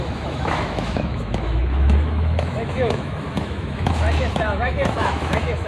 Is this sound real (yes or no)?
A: no